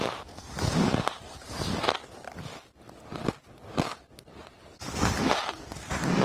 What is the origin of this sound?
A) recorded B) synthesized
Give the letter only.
A